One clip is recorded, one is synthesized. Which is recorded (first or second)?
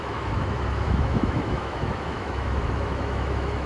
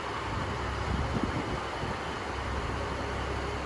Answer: second